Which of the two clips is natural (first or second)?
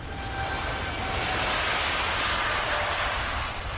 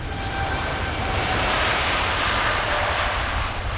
first